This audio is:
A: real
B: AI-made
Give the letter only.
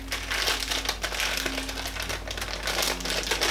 A